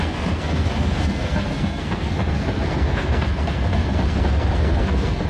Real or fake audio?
fake